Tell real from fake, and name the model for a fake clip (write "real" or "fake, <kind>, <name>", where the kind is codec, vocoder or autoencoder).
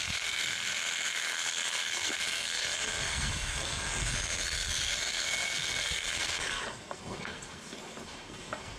fake, codec, SNAC